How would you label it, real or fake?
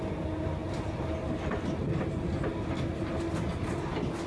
real